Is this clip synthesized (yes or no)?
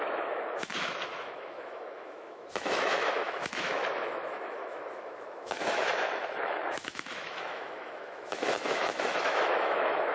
yes